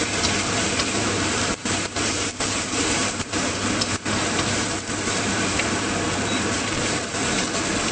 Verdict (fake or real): fake